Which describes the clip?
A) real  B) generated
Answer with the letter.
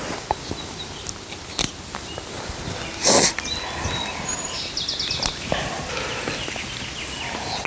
A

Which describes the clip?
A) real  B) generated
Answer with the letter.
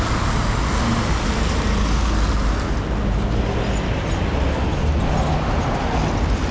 A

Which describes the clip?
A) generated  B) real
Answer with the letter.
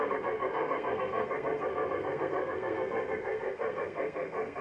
A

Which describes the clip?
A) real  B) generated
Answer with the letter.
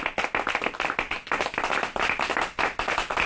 A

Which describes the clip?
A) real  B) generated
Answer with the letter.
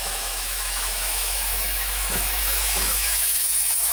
B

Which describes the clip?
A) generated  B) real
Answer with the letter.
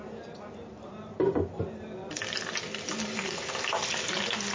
B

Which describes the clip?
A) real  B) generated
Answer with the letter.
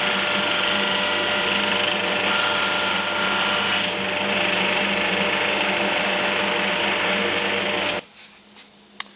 B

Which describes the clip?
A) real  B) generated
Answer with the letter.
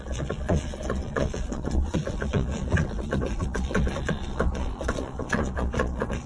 B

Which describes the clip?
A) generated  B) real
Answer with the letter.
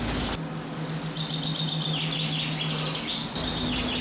B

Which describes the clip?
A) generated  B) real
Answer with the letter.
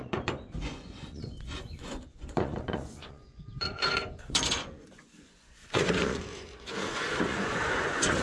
A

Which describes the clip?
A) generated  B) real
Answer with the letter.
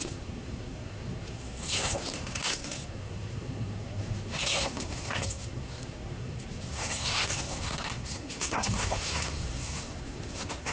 A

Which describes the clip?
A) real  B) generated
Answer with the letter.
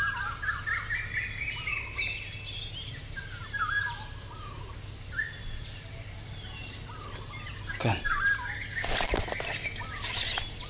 A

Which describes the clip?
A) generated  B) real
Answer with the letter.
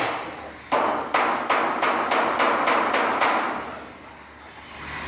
B